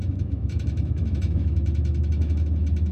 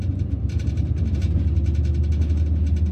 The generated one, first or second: first